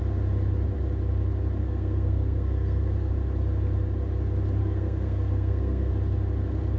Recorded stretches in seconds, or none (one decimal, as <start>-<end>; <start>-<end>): 0.0-1.6; 3.1-4.6; 5.9-6.8